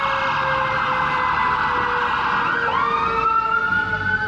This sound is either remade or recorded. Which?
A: recorded